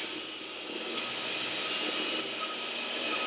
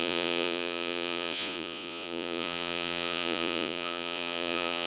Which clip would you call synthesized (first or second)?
second